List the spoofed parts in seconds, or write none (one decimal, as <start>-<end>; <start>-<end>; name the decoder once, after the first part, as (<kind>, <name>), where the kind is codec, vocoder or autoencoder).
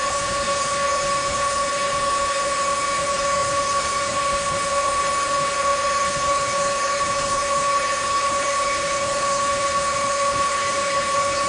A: 0.0-11.5 (codec, HILCodec)